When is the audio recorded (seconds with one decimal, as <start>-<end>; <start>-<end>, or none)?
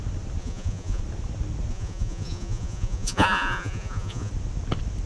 0.0-0.4; 1.0-1.7; 4.3-5.1